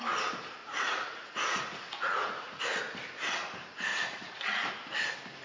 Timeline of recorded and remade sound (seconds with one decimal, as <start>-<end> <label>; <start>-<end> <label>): 0.0-0.6 recorded; 0.6-2.6 remade; 2.6-3.9 recorded; 3.9-4.7 remade; 4.7-5.4 recorded